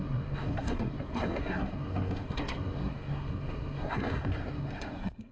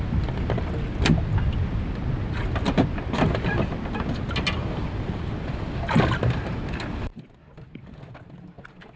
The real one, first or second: second